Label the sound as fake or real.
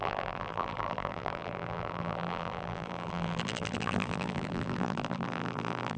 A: fake